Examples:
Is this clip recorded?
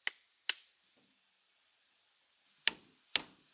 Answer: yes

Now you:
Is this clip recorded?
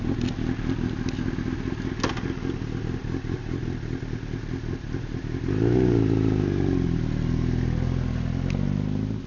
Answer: yes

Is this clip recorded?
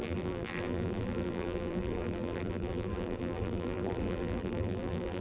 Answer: no